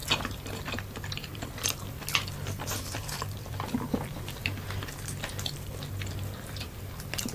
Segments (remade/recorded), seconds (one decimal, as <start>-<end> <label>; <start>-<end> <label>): 0.0-1.3 recorded; 1.3-5.3 remade; 5.3-6.1 recorded; 6.1-7.3 remade